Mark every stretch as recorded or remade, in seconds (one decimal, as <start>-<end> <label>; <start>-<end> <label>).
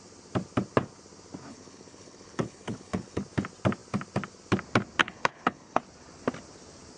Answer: 0.0-1.5 recorded; 1.5-3.2 remade; 3.2-5.0 recorded; 5.0-5.8 remade; 5.8-7.0 recorded